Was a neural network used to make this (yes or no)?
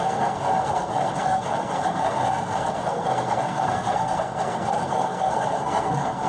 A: yes